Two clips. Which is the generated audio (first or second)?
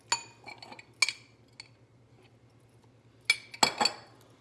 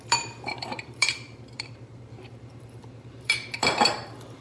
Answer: second